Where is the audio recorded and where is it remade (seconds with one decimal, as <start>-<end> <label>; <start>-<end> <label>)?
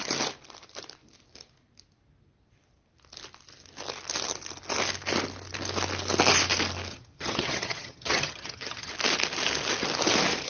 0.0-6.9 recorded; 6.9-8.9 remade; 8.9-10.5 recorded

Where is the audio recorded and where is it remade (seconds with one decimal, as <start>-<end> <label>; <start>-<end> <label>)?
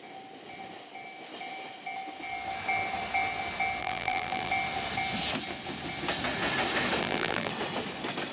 0.0-3.8 recorded; 3.8-4.5 remade; 4.5-7.0 recorded; 7.0-7.5 remade; 7.5-8.3 recorded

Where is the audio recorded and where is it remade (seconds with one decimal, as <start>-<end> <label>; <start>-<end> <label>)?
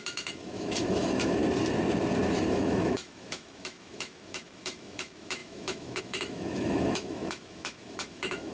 0.0-1.4 remade; 1.4-2.5 recorded; 2.5-8.5 remade